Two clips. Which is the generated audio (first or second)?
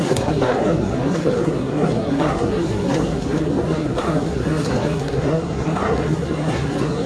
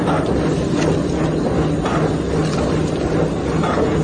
first